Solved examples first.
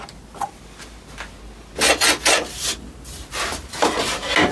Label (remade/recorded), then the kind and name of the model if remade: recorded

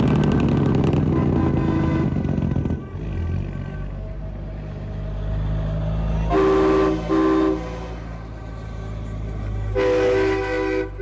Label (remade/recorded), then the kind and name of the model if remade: recorded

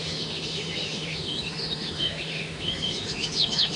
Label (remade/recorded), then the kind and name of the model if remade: remade, autoencoder, DAC-VAE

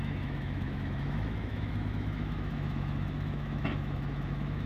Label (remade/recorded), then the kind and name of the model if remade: remade, autoencoder, DAC-VAE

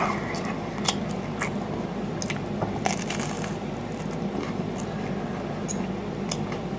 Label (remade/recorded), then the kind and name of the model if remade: recorded